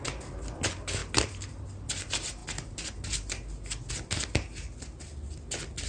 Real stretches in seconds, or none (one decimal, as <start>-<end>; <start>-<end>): 0.0-1.0; 2.0-5.9